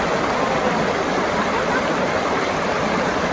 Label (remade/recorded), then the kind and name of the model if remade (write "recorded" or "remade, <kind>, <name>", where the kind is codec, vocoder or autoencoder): recorded